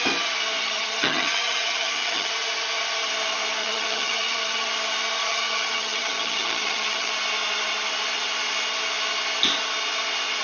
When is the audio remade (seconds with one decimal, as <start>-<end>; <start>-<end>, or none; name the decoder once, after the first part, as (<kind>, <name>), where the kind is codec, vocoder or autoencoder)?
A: 0.6-2.3 (vocoder, HiFi-GAN); 3.6-4.7; 5.2-7.1